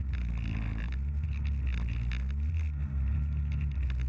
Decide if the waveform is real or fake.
real